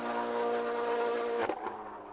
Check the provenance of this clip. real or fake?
real